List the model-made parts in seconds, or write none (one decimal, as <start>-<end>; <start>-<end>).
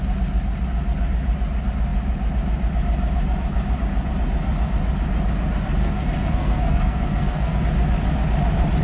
5.8-7.6